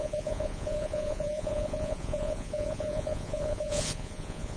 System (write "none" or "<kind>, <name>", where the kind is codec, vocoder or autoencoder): vocoder, Vocos